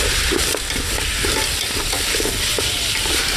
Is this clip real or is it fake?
real